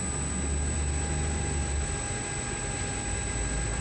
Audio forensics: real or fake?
real